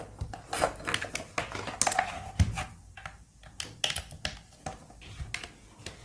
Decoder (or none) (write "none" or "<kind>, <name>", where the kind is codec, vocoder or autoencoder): none